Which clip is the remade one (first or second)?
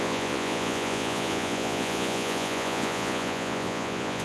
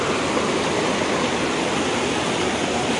first